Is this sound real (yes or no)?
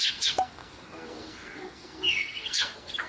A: no